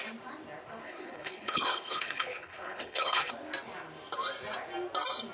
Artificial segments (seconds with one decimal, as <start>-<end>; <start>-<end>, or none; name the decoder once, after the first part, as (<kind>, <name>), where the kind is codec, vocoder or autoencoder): 0.8-3.3 (codec, HILCodec)